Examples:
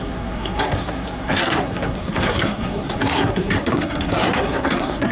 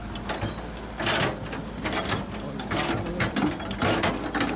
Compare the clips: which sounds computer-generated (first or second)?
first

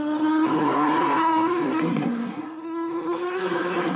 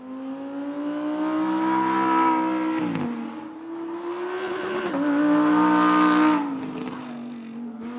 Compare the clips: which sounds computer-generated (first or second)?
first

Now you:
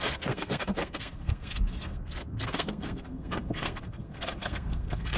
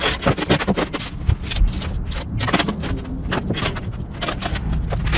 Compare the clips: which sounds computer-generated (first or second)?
first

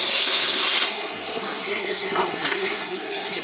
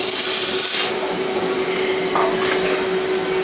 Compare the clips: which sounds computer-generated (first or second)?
first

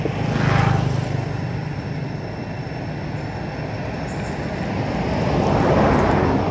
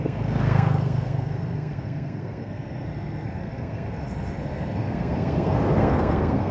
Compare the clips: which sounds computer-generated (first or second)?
second